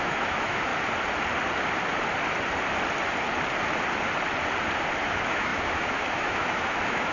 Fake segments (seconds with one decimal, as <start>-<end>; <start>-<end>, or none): 0.0-0.7; 5.0-7.1

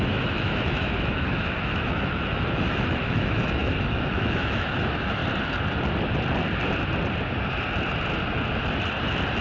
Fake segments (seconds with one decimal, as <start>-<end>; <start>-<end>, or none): 0.0-5.2

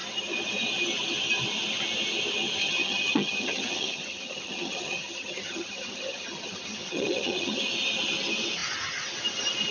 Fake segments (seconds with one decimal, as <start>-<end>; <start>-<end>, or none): 2.6-7.6

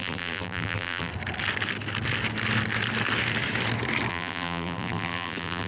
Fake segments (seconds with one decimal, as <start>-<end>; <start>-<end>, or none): 0.0-1.1; 4.1-5.7